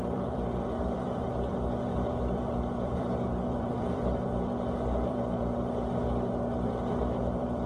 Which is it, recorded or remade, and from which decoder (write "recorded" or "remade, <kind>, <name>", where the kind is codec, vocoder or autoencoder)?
remade, vocoder, BigVGAN v2